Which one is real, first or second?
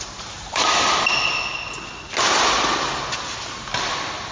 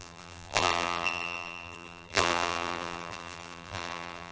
first